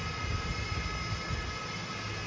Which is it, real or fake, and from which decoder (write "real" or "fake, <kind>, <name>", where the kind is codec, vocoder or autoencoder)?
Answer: real